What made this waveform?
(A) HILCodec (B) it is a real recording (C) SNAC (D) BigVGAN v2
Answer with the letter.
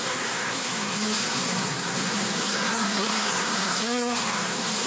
C